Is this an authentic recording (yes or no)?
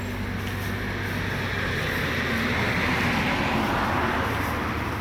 yes